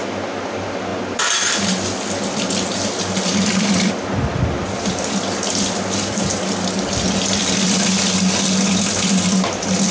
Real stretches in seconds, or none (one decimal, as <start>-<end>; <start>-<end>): 0.0-9.9